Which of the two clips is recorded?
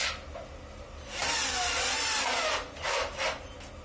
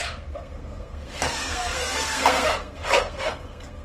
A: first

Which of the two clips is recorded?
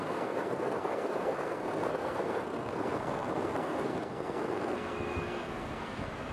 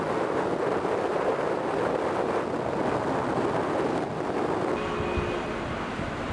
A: second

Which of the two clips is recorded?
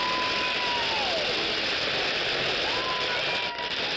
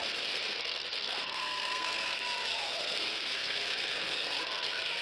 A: first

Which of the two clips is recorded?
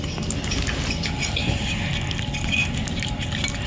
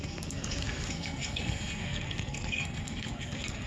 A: first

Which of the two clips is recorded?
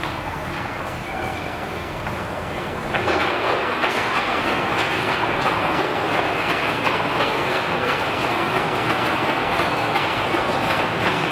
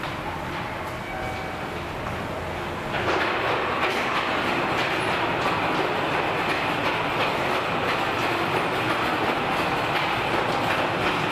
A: second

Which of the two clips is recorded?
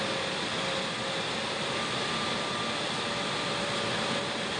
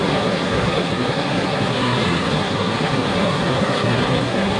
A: first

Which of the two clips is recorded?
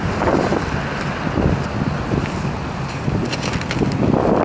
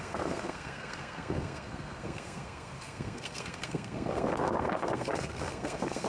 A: first